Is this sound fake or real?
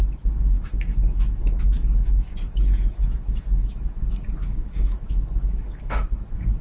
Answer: fake